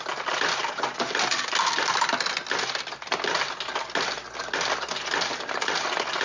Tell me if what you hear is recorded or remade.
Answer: recorded